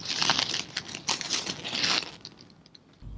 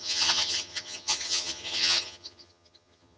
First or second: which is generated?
second